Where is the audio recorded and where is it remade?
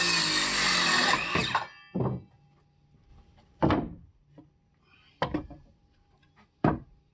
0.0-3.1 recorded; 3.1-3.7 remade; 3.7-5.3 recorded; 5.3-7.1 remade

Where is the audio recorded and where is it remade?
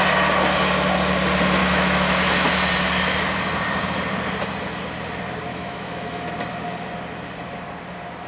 0.0-1.6 recorded; 1.6-2.5 remade; 2.5-5.5 recorded; 5.5-6.3 remade; 6.3-8.3 recorded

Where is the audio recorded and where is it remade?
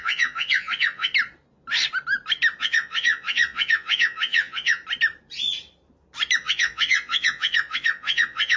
0.0-1.1 remade; 1.1-2.6 recorded; 2.6-4.8 remade; 4.8-6.4 recorded; 6.4-8.6 remade